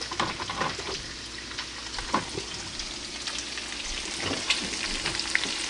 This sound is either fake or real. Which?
real